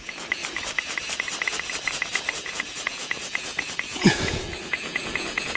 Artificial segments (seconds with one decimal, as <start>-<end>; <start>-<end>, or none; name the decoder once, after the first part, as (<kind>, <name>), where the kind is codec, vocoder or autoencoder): 0.0-0.4 (vocoder, Vocos); 2.5-5.6